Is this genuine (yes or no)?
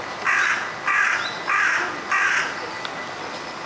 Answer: yes